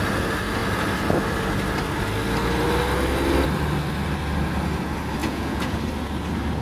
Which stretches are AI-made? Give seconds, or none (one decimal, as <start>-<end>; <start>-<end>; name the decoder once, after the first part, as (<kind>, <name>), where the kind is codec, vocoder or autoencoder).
5.2-5.8 (vocoder, Vocos)